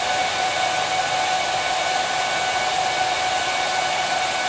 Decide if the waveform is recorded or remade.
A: recorded